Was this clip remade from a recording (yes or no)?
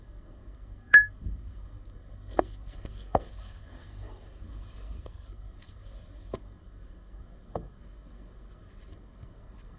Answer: yes